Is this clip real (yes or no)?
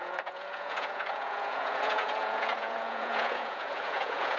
no